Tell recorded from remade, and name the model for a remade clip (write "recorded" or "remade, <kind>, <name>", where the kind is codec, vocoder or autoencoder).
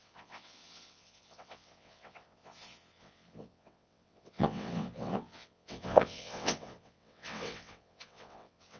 remade, vocoder, WaveNeXt